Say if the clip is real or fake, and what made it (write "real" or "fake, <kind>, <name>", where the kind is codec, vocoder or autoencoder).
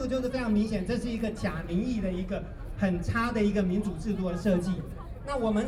real